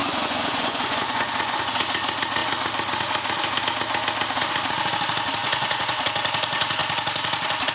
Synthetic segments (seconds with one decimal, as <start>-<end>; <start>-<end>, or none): 0.0-1.6; 5.4-6.0